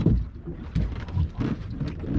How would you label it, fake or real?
real